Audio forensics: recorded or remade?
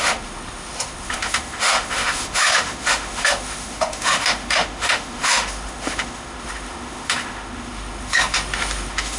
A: remade